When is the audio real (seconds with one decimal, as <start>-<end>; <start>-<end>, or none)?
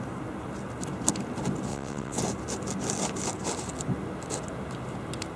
0.0-1.7; 2.2-5.4